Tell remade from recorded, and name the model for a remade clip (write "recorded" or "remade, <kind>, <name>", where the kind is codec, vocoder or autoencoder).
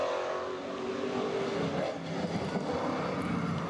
recorded